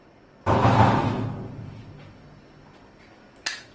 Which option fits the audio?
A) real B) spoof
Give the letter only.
A